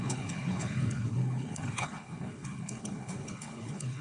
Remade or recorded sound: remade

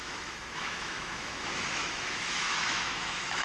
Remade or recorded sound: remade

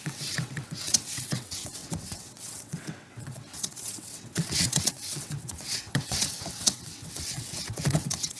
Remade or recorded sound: remade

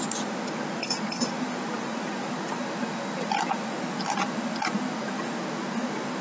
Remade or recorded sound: recorded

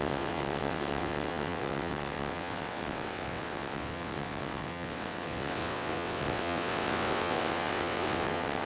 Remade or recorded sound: remade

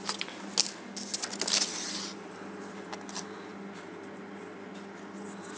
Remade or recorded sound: recorded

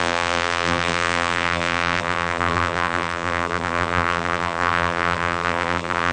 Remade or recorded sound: remade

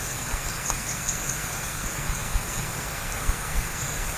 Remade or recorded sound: remade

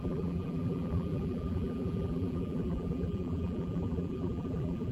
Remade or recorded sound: remade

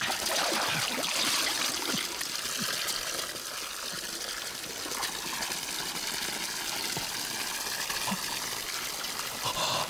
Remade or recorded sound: recorded